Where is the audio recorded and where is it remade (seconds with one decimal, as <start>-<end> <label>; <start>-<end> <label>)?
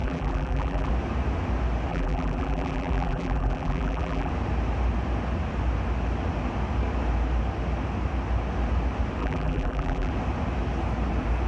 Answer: 0.0-0.9 remade; 0.9-1.9 recorded; 1.9-4.3 remade; 4.3-9.2 recorded; 9.2-10.1 remade; 10.1-11.5 recorded